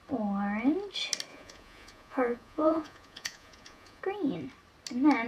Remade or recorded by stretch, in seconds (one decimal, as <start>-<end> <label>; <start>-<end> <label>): 0.0-1.3 recorded; 1.3-4.0 remade; 4.0-5.3 recorded